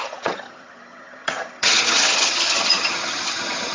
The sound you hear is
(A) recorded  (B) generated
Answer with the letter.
B